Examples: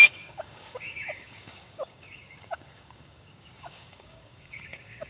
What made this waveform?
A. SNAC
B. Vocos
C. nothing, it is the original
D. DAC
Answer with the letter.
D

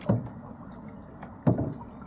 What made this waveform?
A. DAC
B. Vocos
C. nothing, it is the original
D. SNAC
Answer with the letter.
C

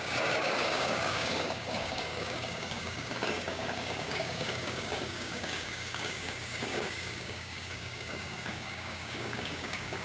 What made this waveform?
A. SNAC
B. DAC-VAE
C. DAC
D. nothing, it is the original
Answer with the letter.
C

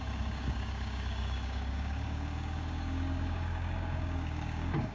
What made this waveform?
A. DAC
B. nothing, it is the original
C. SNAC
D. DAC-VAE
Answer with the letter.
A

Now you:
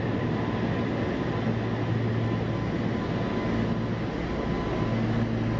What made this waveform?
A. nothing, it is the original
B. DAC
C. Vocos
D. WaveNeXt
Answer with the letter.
A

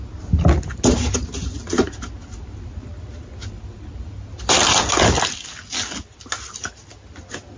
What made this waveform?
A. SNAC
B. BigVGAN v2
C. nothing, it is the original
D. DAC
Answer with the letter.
C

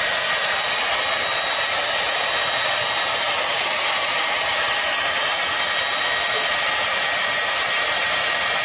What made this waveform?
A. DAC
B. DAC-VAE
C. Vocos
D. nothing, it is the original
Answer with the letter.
D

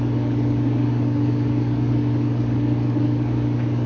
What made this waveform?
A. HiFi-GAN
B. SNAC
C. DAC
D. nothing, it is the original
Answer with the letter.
C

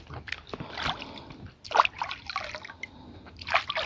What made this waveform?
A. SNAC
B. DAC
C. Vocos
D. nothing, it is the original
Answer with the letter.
D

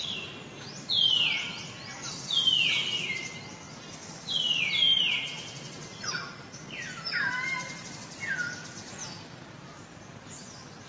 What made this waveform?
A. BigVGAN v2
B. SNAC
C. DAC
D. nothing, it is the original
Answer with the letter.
D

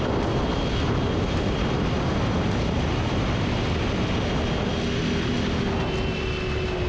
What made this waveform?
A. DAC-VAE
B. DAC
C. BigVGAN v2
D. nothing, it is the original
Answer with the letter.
D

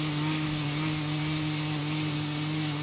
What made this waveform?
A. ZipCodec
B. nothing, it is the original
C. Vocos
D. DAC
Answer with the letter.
B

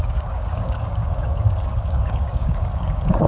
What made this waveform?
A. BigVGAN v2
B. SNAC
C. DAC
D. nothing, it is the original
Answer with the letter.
C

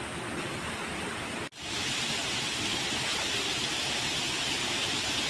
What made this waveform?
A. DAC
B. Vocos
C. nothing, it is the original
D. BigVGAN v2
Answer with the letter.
C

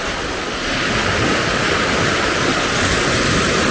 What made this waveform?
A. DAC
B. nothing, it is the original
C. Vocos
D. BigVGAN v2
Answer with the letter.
B